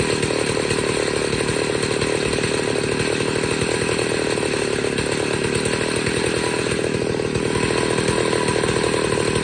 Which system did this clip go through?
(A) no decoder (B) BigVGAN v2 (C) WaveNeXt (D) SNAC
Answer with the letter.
A